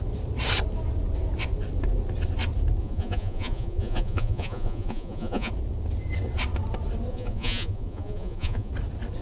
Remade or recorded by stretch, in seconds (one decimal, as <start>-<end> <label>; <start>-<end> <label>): 0.0-2.8 recorded; 2.8-5.5 remade; 5.5-7.1 recorded; 7.1-8.7 remade; 8.7-9.2 recorded